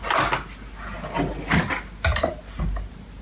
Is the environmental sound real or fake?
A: real